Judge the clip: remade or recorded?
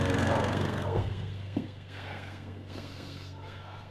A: remade